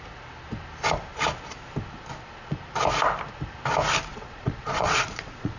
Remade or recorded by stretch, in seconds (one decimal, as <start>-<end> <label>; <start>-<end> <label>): 0.0-4.1 recorded; 4.1-5.6 remade